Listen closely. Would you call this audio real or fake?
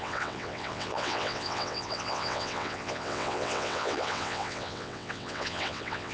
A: fake